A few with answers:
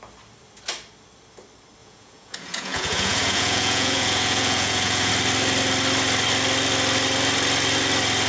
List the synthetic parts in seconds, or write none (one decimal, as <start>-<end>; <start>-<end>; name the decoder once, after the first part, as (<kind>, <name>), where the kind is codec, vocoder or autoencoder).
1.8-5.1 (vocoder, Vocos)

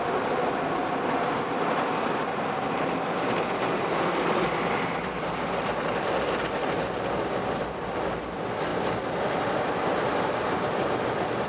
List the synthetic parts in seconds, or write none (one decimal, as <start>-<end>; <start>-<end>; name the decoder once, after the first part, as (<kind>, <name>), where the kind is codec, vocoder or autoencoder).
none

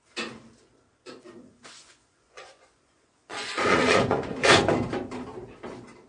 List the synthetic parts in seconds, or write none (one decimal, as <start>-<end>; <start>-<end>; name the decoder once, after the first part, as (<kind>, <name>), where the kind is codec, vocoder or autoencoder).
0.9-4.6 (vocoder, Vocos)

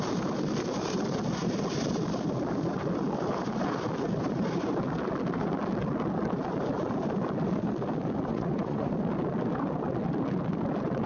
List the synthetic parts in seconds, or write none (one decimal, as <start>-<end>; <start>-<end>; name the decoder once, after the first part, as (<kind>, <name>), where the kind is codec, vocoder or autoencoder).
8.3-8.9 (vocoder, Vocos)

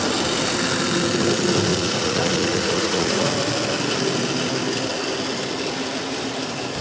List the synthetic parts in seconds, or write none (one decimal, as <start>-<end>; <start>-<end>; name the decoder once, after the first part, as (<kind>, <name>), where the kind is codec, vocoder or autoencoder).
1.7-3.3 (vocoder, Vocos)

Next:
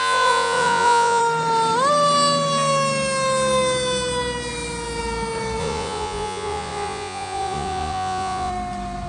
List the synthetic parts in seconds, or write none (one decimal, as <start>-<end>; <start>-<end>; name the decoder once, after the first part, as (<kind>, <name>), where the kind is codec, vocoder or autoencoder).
0.0-1.2 (vocoder, Vocos); 5.6-8.5